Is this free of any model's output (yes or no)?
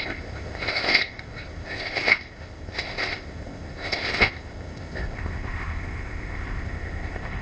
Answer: no